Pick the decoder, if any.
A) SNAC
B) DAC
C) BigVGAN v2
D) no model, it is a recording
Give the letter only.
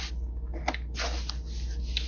D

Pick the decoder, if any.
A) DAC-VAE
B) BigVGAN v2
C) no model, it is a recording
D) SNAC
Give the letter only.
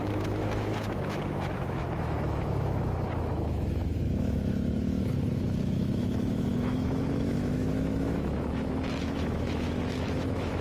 A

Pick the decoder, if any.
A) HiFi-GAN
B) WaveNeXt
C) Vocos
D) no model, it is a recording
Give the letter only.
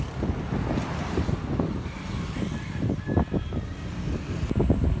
D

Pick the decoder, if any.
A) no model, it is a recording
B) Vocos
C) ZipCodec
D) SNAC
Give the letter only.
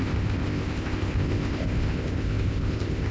C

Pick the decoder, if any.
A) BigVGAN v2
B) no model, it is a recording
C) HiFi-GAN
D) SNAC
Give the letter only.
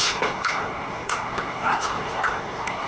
D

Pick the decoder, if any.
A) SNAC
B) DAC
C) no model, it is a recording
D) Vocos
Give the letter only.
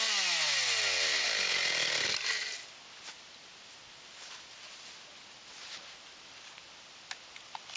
C